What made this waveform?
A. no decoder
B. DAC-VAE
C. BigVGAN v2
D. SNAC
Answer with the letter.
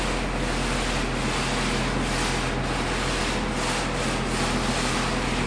A